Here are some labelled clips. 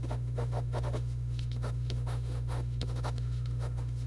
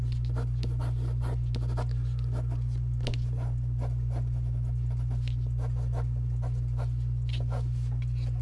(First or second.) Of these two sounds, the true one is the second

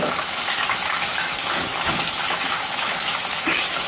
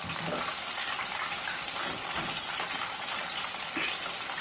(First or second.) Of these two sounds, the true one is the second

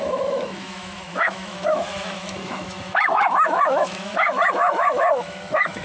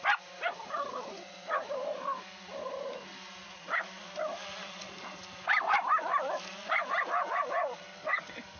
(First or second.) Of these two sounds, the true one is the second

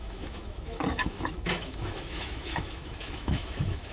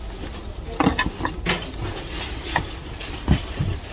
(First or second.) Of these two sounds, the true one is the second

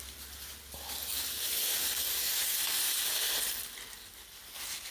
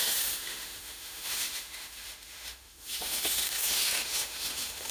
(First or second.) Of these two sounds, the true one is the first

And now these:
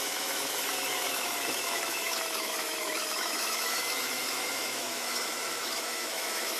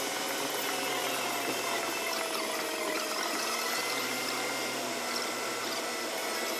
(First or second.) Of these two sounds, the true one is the second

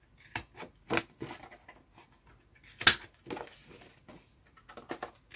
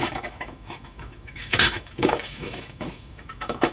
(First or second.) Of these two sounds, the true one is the first